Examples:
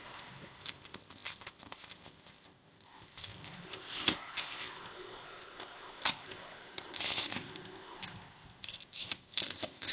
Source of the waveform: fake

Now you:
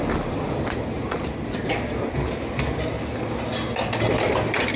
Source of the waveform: real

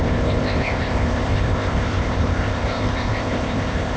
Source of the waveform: fake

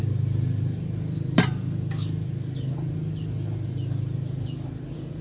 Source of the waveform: real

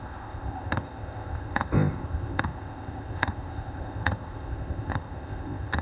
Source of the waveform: fake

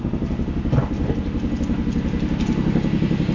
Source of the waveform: real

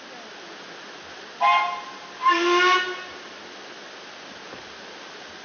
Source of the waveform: real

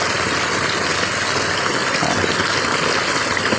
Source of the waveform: real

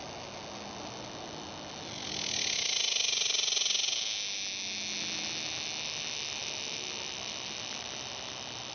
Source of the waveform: real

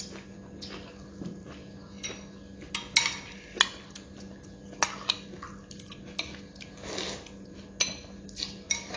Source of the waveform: real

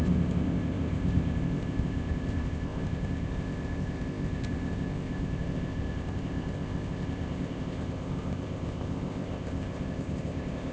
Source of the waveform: fake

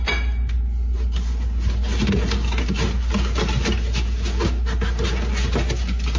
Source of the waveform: real